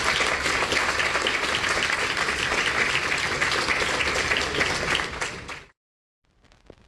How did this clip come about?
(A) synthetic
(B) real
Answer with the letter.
B